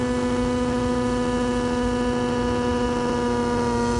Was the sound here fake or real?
real